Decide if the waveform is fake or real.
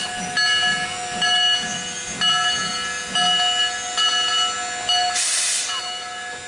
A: real